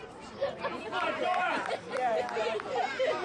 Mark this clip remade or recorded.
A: remade